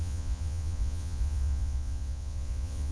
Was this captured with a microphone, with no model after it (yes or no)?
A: no